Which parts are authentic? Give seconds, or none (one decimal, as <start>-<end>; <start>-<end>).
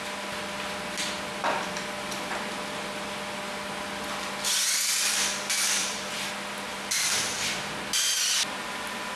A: 0.0-5.8; 6.3-6.7; 7.7-9.2